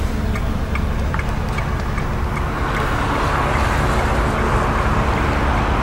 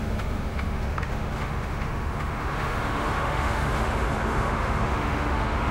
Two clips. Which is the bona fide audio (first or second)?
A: first